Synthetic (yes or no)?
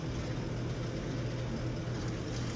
no